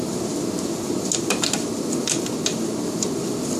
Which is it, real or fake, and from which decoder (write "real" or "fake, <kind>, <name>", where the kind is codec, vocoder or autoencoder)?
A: real